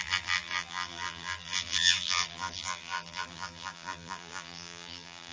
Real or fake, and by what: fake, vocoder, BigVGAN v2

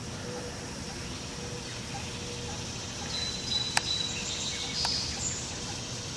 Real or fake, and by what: real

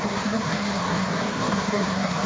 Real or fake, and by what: fake, codec, SNAC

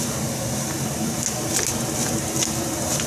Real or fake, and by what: real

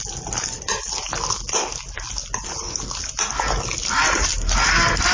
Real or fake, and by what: real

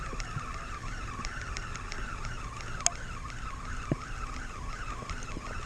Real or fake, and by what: real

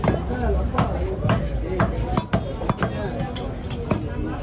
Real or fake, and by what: real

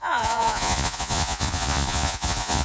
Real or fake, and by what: fake, vocoder, Vocos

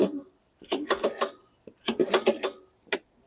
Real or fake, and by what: real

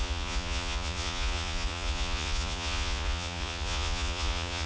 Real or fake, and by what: fake, vocoder, Vocos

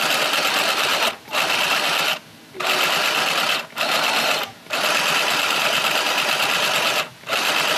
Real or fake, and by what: real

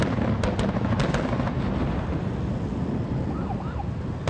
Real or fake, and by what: real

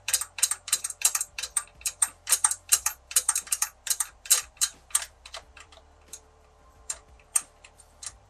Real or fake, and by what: fake, vocoder, BigVGAN v2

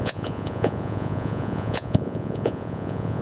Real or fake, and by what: fake, vocoder, Vocos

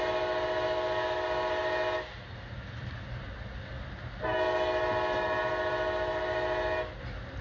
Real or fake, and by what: real